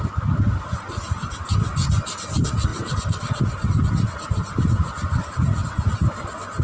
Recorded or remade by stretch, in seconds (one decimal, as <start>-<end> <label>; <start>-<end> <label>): 0.0-6.6 recorded